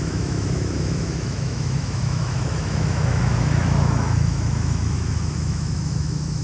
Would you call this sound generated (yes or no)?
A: yes